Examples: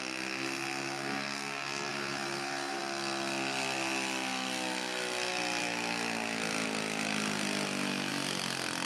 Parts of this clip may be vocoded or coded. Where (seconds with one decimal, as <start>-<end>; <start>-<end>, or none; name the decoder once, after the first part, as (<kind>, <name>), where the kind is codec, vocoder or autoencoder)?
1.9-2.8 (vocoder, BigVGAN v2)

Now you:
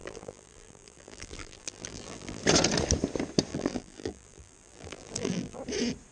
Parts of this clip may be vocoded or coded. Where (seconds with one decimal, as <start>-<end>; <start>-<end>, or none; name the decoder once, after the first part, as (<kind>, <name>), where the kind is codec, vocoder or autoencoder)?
0.0-2.4 (vocoder, BigVGAN v2); 3.5-5.6

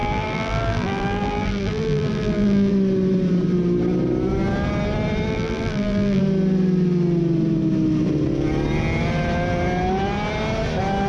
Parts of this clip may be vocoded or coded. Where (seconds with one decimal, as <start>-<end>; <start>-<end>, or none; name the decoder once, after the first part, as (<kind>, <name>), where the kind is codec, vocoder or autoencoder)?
0.0-2.7 (vocoder, BigVGAN v2); 5.3-6.2

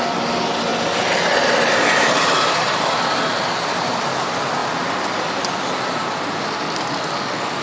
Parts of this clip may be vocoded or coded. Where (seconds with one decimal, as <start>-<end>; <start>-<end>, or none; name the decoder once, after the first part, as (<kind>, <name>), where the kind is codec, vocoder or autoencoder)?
0.7-2.9 (vocoder, BigVGAN v2); 4.6-6.8